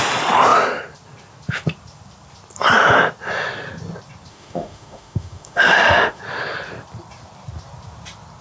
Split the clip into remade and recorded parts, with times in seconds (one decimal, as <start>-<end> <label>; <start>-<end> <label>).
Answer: 0.0-4.3 recorded; 4.3-6.2 remade; 6.2-8.4 recorded